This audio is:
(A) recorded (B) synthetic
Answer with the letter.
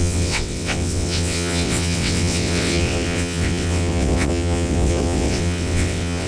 B